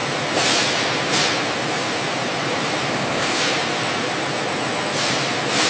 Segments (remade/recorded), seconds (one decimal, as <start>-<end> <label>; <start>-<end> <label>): 0.0-2.9 recorded; 2.9-3.4 remade; 3.4-5.7 recorded